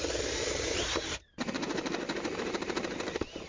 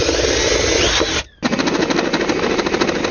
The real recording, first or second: second